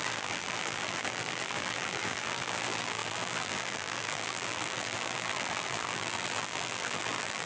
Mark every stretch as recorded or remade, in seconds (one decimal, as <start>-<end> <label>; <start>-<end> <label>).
0.0-7.5 remade